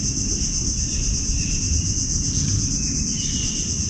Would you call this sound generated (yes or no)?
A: no